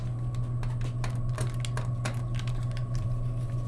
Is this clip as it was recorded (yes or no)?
yes